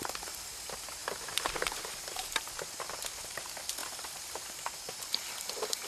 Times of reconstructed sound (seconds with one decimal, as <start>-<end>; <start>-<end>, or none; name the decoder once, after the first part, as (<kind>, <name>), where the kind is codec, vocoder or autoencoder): none